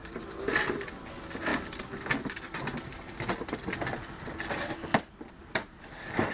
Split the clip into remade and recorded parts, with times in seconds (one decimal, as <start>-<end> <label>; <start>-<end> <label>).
0.0-6.3 recorded

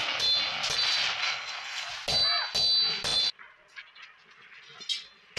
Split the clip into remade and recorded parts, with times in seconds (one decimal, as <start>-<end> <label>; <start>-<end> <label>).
0.0-1.2 recorded; 1.2-1.9 remade; 1.9-5.4 recorded

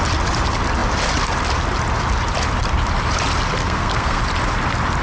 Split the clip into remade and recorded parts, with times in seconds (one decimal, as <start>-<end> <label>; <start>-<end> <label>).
0.0-3.6 recorded; 3.6-4.2 remade; 4.2-5.0 recorded

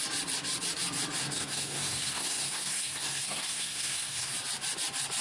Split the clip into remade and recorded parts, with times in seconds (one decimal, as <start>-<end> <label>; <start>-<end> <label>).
0.0-1.2 recorded; 1.2-4.3 remade; 4.3-5.2 recorded

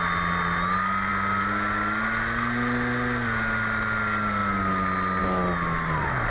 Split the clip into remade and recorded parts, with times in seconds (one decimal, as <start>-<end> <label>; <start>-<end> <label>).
0.0-6.3 recorded